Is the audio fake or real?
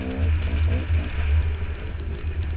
real